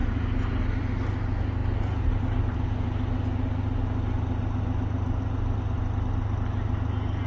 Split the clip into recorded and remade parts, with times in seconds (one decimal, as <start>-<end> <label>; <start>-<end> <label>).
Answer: 0.0-7.3 recorded